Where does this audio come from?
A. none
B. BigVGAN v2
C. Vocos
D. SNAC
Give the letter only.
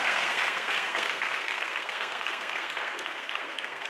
D